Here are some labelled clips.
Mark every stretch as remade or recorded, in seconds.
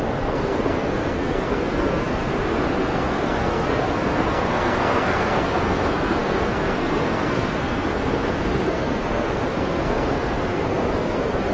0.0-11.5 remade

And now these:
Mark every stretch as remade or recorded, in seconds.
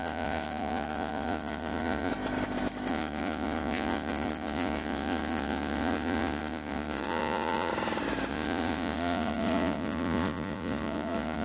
0.0-2.1 remade; 2.1-2.9 recorded; 2.9-7.7 remade; 7.7-8.3 recorded; 8.3-11.4 remade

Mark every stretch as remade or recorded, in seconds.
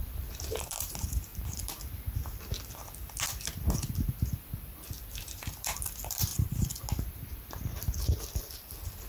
0.0-9.1 remade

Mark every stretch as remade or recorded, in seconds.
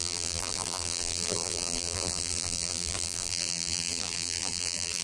0.0-5.0 remade